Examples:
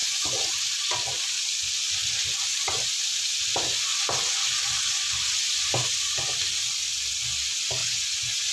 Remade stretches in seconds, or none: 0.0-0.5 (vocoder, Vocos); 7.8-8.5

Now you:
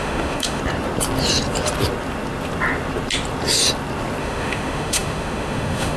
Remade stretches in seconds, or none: 0.0-0.6 (autoencoder, DAC-VAE); 4.2-6.0

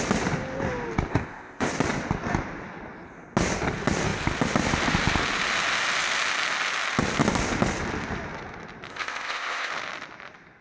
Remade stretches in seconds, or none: 1.1-1.7 (codec, ZipCodec); 8.9-9.7